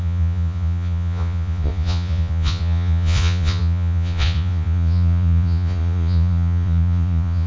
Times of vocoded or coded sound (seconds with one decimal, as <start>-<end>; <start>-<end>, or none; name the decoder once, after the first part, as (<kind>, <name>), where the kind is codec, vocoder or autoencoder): 0.0-7.5 (vocoder, Vocos)